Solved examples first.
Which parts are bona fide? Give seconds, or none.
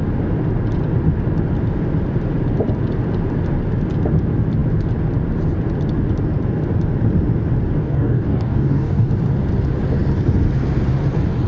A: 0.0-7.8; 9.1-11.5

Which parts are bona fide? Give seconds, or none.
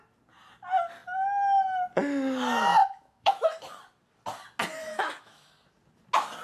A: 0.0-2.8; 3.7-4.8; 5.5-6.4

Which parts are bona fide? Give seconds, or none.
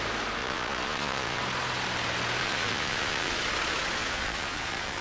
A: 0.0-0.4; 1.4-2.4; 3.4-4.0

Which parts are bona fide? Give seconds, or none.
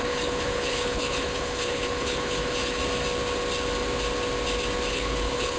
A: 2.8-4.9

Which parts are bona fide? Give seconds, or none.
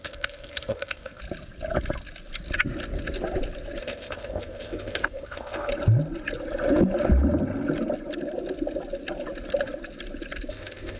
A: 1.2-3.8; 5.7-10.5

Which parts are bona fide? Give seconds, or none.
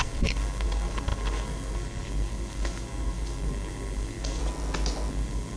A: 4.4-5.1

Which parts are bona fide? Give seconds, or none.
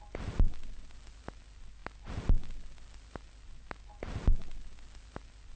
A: 0.0-5.6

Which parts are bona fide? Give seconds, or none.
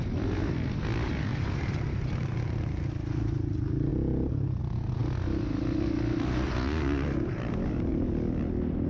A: 0.0-1.3; 2.3-8.9